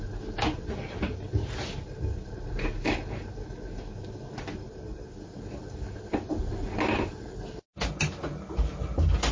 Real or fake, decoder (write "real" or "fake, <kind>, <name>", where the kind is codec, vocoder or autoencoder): real